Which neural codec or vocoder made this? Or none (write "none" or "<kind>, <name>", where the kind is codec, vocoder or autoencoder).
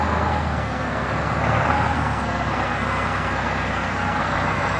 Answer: codec, SNAC